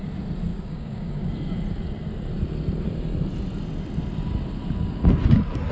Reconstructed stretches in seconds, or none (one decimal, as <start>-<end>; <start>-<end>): 0.5-1.3